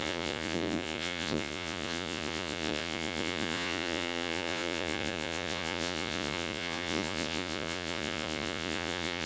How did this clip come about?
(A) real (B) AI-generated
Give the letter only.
B